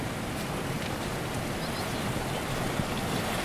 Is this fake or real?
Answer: real